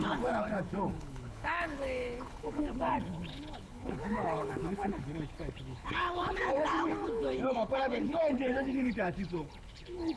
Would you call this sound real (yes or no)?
no